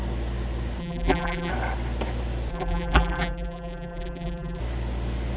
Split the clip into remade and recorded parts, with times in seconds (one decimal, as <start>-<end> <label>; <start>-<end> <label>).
0.0-0.8 recorded; 0.8-1.5 remade; 1.5-2.5 recorded; 2.5-4.6 remade; 4.6-5.4 recorded